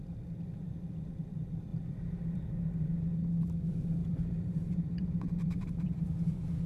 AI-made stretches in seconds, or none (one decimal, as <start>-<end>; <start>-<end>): 1.7-3.0; 4.0-6.1